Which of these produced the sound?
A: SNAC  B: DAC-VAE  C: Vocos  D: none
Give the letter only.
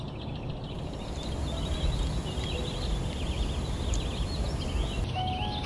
D